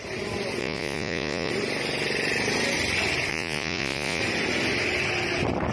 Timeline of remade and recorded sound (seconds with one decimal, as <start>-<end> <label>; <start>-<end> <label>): 0.0-0.6 recorded; 0.6-1.5 remade; 1.5-3.3 recorded; 3.3-4.2 remade; 4.2-5.7 recorded